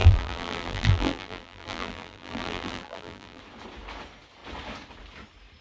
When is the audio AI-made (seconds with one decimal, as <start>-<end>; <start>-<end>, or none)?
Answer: 0.0-3.4

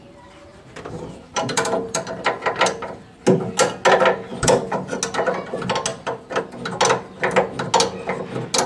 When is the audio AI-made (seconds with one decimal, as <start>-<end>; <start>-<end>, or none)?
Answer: 0.5-3.1; 4.3-5.0; 5.9-6.4

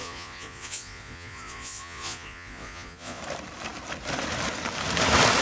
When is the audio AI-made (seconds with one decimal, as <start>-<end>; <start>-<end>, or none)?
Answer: 0.0-3.2

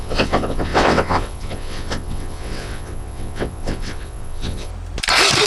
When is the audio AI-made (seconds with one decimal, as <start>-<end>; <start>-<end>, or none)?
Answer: 0.0-4.7

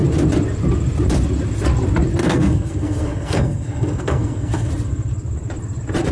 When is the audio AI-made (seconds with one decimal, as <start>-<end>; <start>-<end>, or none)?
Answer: 2.2-4.7